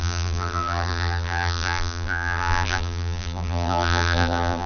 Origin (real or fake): fake